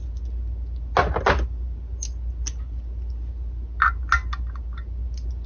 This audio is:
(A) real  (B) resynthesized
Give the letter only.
A